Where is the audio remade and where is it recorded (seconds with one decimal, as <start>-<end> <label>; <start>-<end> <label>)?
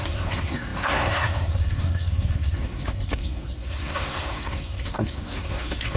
0.0-6.0 remade